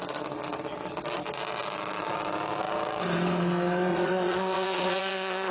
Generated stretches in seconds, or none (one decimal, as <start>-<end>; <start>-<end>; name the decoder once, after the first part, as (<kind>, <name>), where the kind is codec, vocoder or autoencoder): 3.9-5.5 (vocoder, Vocos)